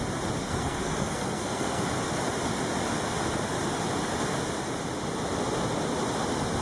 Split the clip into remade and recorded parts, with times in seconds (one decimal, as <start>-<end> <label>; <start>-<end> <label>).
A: 0.0-0.4 recorded; 0.4-1.8 remade; 1.8-6.6 recorded